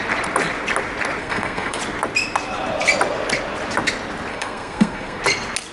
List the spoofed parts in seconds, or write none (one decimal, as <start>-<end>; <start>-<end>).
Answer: 1.2-1.8; 4.3-5.2